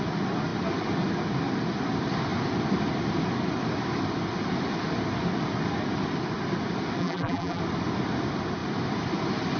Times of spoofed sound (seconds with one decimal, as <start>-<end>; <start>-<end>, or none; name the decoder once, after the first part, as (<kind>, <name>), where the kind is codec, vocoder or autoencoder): 7.0-7.6 (vocoder, BigVGAN v2)